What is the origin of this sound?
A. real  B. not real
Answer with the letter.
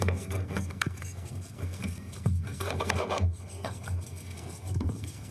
B